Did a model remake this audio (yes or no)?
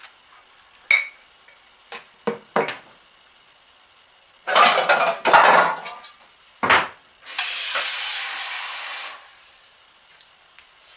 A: no